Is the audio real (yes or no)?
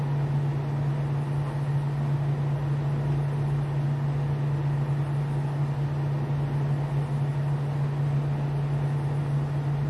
yes